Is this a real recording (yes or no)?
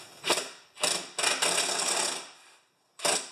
yes